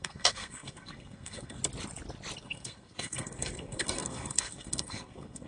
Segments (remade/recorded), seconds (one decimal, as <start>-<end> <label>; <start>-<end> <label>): 0.0-1.6 remade; 1.6-2.4 recorded; 2.4-5.5 remade